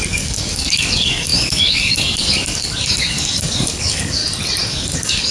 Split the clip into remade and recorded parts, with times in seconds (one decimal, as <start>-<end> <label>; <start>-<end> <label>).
0.0-4.2 remade; 4.2-4.7 recorded; 4.7-5.3 remade